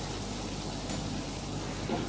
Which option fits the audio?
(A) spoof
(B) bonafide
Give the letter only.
B